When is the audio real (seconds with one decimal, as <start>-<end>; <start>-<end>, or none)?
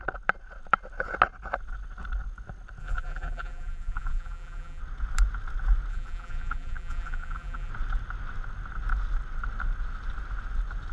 0.0-2.8; 4.8-5.9; 7.7-10.9